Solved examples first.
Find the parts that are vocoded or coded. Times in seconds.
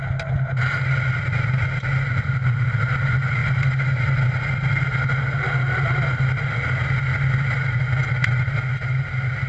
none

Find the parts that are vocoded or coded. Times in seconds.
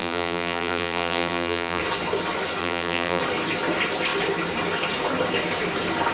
0.0-1.8 (vocoder, BigVGAN v2); 2.6-3.2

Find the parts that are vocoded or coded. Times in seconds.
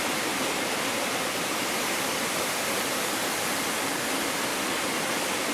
0.0-4.5 (vocoder, BigVGAN v2); 5.1-5.5